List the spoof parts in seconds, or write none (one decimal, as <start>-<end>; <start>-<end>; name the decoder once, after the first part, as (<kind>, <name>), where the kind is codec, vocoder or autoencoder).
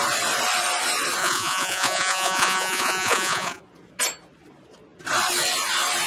1.2-3.6 (vocoder, Vocos)